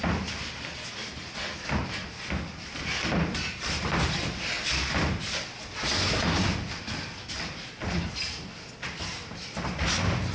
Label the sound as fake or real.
real